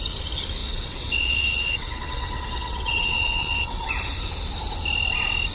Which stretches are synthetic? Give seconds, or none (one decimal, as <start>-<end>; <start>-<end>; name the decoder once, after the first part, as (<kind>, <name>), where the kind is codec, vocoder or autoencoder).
0.6-3.9 (vocoder, WaveNeXt)